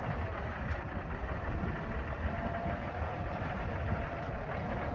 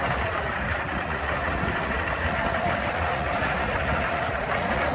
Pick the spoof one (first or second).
second